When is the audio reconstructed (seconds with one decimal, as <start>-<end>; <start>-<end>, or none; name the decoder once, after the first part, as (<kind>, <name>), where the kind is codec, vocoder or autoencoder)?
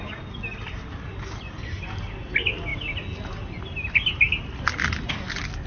none